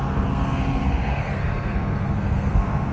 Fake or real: fake